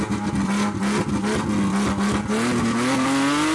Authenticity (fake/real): real